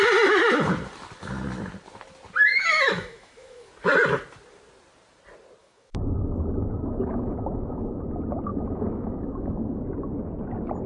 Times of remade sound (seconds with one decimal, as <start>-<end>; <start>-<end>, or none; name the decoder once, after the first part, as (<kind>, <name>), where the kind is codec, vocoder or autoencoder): 2.5-3.7 (autoencoder, DAC-VAE); 5.6-8.0; 8.5-9.8